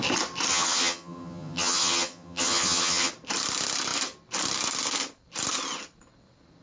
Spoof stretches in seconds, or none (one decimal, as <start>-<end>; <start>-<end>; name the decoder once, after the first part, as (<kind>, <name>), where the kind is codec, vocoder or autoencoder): 0.5-3.1 (vocoder, HiFi-GAN)